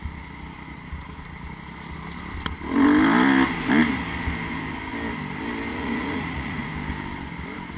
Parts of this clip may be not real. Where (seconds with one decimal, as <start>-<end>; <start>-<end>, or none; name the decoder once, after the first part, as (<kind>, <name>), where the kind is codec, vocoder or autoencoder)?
5.7-6.7 (vocoder, Vocos)